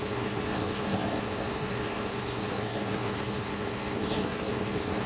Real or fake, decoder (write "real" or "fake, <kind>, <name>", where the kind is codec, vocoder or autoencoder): fake, codec, SNAC